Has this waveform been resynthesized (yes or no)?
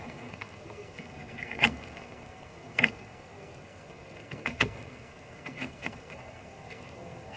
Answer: yes